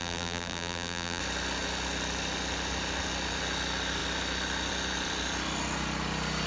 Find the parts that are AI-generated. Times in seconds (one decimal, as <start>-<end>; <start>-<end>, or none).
0.0-1.2